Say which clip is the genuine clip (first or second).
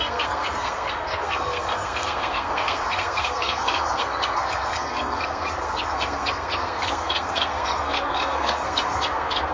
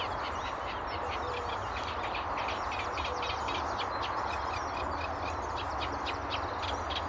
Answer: second